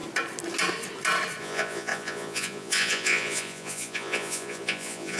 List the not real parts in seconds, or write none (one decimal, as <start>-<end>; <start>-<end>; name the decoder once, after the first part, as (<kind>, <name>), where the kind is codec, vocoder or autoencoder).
1.4-5.2 (vocoder, Vocos)